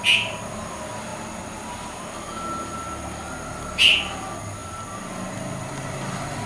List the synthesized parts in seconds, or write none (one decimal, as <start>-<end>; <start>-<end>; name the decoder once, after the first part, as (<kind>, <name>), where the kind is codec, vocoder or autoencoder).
none